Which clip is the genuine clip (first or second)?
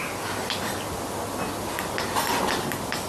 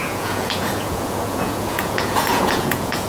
first